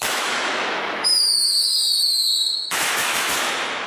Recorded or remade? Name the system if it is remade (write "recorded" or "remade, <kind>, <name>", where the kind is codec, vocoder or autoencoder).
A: remade, autoencoder, DAC-VAE